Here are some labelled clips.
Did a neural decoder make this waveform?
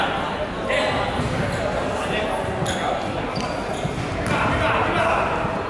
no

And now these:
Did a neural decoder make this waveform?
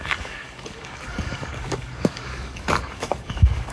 yes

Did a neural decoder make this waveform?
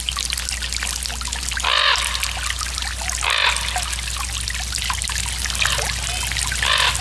no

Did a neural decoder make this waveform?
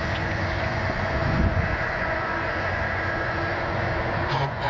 yes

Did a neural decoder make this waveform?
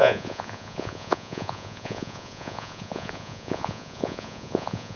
yes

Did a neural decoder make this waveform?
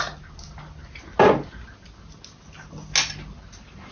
no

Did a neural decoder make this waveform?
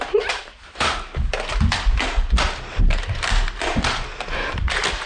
no